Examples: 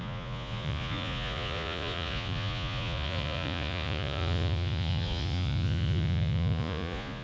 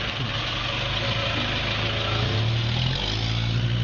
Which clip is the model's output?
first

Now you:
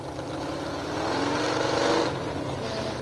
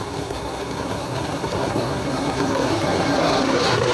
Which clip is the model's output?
second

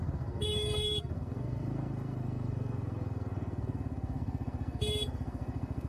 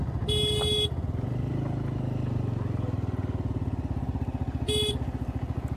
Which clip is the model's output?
first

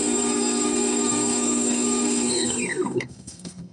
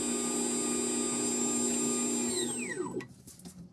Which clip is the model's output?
first